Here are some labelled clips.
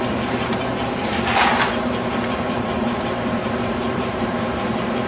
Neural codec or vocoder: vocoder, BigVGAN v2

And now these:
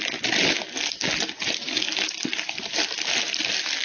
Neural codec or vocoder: none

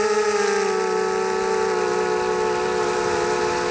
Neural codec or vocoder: none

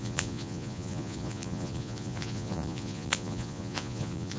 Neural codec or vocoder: vocoder, Vocos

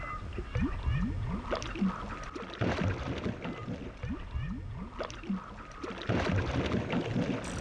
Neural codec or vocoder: none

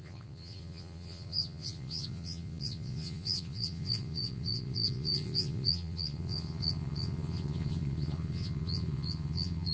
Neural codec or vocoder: vocoder, Vocos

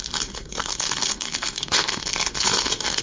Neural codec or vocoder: codec, SNAC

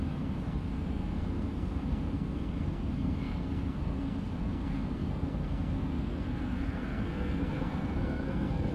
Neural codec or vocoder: codec, SNAC